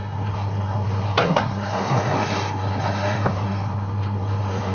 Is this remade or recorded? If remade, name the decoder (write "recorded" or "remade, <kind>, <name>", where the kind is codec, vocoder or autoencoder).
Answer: remade, codec, SNAC